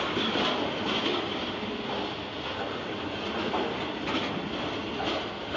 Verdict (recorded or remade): recorded